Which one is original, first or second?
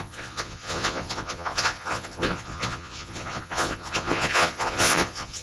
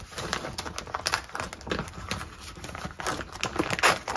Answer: second